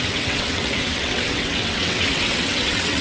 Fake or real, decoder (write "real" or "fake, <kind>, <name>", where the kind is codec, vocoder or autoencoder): fake, vocoder, WaveNeXt